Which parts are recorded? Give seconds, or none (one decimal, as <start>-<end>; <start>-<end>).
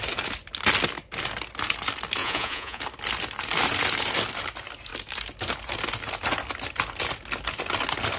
0.0-2.2; 2.8-8.2